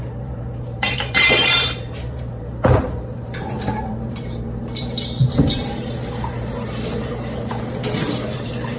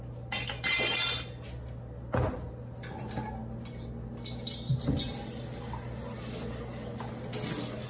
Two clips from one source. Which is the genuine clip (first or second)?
second